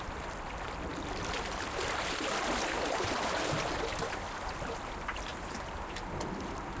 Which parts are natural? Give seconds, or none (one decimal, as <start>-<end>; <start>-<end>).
0.0-5.3; 6.0-6.8